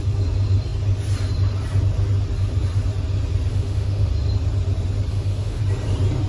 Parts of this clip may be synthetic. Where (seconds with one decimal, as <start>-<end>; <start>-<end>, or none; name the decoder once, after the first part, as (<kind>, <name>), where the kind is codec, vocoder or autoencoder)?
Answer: 3.5-4.1 (autoencoder, DAC-VAE); 5.1-5.6